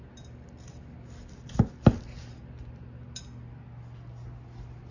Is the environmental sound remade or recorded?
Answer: recorded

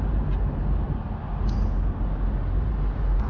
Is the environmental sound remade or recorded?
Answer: recorded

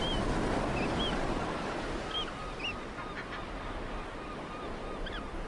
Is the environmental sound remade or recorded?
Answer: recorded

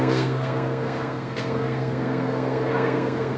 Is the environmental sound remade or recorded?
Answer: remade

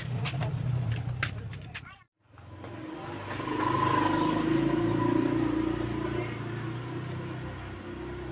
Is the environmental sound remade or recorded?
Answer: recorded